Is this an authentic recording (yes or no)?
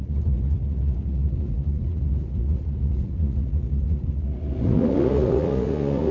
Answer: no